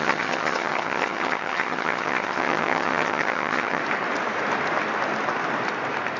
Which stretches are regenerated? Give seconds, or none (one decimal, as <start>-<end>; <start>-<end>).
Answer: 0.0-3.8